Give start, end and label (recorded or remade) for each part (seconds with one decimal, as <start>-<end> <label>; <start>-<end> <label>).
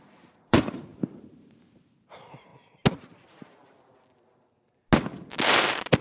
0.0-2.5 remade; 2.5-5.6 recorded; 5.6-6.0 remade